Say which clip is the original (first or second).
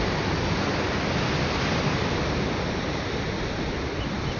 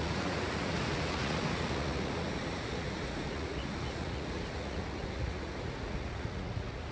first